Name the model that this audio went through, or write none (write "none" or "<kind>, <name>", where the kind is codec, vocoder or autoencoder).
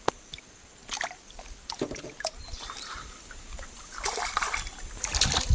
vocoder, BigVGAN v2